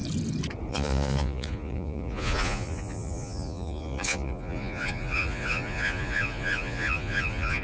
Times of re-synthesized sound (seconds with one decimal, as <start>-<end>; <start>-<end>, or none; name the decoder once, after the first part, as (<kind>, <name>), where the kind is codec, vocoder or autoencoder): 0.7-7.6 (vocoder, Vocos)